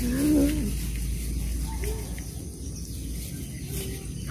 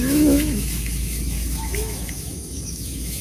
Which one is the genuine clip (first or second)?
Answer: first